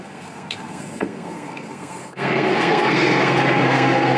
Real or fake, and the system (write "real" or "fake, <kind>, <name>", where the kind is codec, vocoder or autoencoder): fake, codec, SNAC